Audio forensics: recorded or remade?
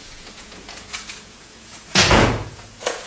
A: remade